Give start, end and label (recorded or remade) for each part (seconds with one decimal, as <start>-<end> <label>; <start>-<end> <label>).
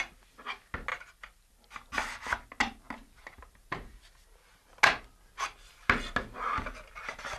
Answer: 0.0-0.9 recorded; 0.9-1.5 remade; 1.5-3.0 recorded; 3.0-4.7 remade; 4.7-7.4 recorded